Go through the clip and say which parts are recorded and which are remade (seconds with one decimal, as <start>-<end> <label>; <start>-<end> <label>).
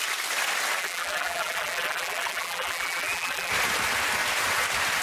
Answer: 0.0-0.8 recorded; 0.8-3.5 remade; 3.5-5.0 recorded